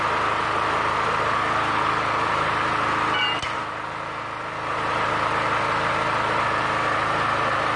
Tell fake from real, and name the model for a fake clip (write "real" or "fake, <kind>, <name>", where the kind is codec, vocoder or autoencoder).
real